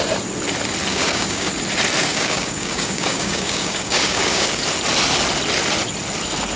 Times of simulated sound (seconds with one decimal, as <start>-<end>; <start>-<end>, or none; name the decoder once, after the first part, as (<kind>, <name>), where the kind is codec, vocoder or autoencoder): 0.9-1.5 (codec, DAC); 2.0-4.6